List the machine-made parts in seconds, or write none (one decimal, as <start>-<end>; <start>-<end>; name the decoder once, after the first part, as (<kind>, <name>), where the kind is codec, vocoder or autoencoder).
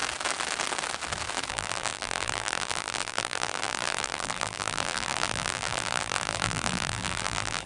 1.5-7.7 (vocoder, BigVGAN v2)